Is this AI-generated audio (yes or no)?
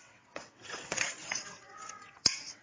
yes